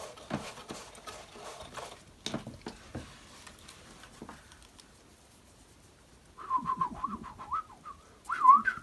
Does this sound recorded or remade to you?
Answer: recorded